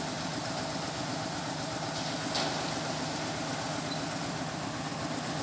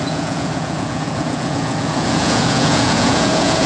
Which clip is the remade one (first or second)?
second